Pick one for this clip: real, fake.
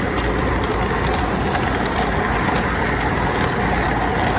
real